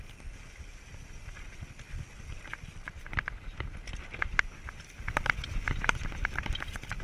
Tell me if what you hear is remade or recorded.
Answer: recorded